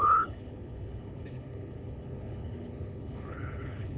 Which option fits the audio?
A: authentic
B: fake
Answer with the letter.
B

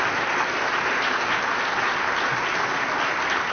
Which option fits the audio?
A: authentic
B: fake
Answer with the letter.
A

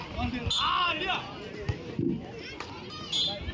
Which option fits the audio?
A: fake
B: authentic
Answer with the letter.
B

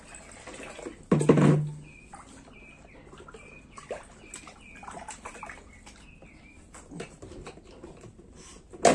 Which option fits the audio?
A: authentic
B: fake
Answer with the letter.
A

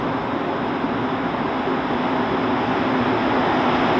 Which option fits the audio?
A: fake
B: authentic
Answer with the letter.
B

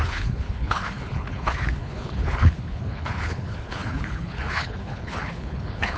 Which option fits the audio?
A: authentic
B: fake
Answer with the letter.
B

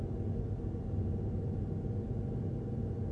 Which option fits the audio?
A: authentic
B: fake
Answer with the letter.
A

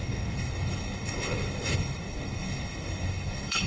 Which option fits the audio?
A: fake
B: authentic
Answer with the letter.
A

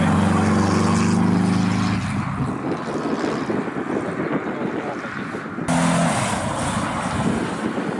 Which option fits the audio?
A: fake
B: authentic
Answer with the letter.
B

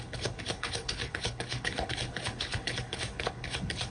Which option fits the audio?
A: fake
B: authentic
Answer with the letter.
A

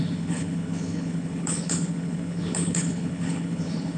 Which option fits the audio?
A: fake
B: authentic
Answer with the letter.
A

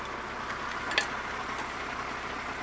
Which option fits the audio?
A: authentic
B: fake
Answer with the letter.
A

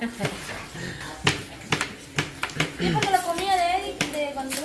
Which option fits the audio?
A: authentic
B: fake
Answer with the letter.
A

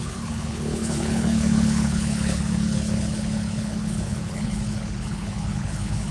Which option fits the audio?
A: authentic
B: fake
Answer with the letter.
B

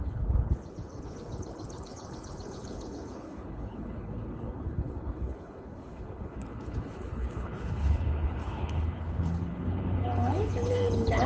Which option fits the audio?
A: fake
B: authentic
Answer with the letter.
A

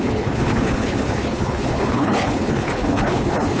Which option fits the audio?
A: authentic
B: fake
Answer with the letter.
B